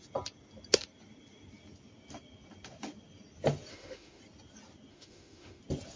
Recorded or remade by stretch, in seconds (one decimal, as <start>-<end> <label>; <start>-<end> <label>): 0.0-3.7 recorded; 3.7-4.2 remade; 4.2-4.9 recorded; 4.9-5.6 remade; 5.6-6.0 recorded

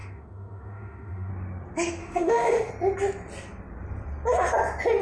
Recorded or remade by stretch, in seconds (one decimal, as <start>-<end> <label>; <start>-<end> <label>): 0.0-1.3 remade; 1.3-2.0 recorded; 2.0-2.7 remade; 2.7-5.0 recorded

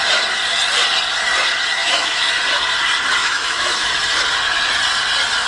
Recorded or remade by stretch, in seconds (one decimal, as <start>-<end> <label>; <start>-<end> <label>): 0.0-1.8 recorded; 1.8-2.3 remade; 2.3-3.2 recorded; 3.2-3.9 remade; 3.9-5.5 recorded

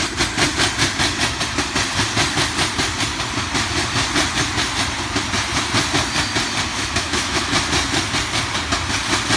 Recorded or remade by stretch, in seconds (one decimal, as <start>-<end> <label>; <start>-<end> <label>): 0.0-6.7 recorded; 6.7-7.4 remade; 7.4-9.4 recorded